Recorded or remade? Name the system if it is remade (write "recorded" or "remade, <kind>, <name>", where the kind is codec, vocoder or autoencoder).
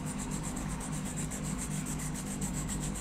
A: remade, codec, DAC